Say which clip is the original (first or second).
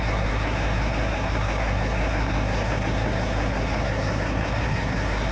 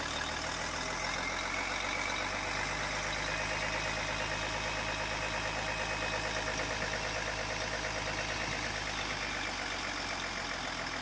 second